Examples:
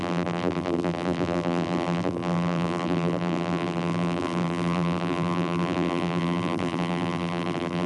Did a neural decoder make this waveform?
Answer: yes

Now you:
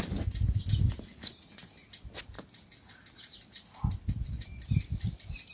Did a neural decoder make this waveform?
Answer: no